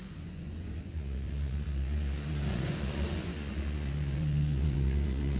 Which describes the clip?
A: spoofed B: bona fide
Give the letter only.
A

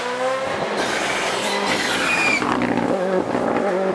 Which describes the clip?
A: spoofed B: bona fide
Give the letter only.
B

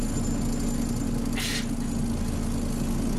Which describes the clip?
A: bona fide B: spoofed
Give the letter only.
A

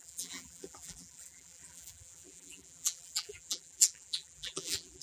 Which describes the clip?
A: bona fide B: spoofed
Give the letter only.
B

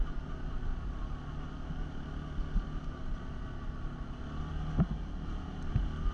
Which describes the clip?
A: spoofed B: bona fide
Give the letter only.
B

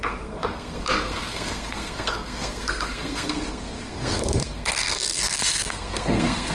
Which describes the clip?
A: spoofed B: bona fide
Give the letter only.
A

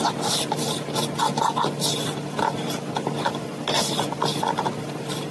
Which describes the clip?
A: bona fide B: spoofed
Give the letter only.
A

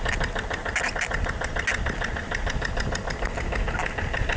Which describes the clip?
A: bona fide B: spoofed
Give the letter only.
A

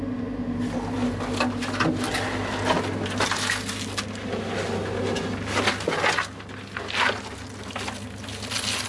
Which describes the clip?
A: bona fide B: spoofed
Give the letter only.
A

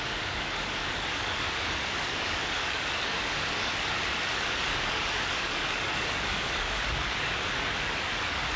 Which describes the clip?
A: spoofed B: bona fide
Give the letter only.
A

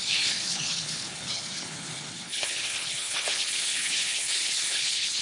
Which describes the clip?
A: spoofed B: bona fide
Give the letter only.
A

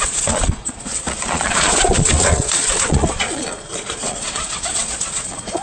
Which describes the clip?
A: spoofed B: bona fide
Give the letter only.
A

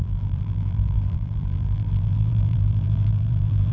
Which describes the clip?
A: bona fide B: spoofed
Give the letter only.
B